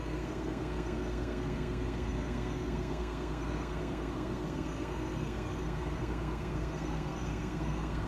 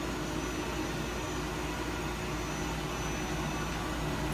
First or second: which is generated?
first